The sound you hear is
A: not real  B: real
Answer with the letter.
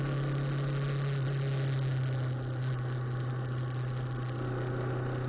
B